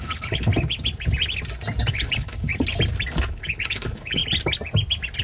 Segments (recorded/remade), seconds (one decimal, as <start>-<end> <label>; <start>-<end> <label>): 0.0-0.5 remade; 0.5-1.9 recorded; 1.9-2.5 remade; 2.5-3.3 recorded; 3.3-4.2 remade; 4.2-5.2 recorded